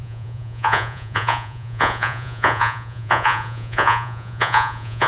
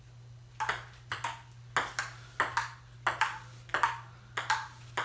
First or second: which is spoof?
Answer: first